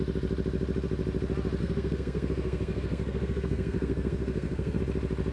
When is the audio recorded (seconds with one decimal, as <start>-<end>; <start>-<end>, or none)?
0.0-1.6; 4.8-5.3